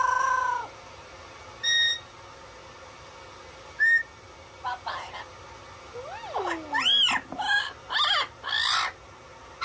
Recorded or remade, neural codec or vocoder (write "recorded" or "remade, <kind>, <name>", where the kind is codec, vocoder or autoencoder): recorded